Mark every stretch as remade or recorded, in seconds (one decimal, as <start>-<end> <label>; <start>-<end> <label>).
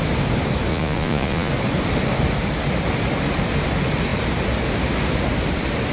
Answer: 0.0-0.7 recorded; 0.7-1.5 remade; 1.5-5.9 recorded